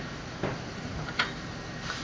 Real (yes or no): yes